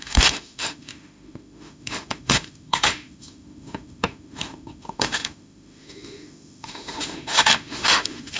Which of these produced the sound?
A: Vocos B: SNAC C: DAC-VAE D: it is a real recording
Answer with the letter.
C